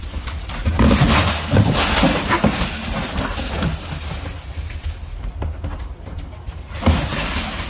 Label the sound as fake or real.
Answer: real